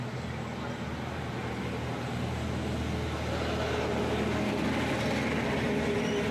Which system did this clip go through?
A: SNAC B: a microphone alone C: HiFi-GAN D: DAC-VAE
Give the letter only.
B